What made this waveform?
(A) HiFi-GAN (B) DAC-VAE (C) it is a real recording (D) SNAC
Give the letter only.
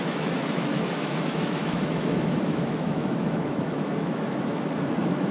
B